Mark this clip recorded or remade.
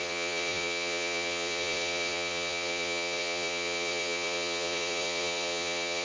remade